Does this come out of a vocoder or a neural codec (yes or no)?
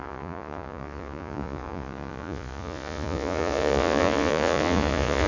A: yes